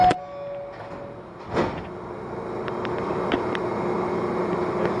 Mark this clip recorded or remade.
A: recorded